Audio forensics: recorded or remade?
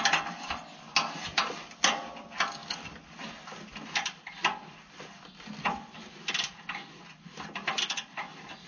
recorded